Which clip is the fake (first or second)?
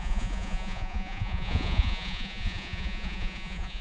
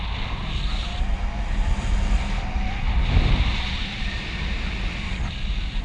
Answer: first